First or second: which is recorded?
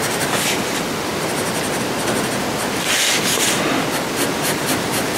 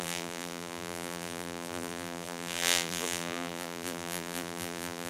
first